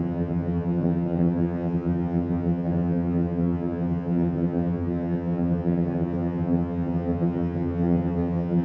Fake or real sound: fake